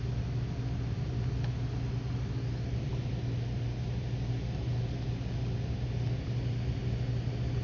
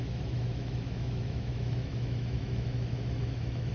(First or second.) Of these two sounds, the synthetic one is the second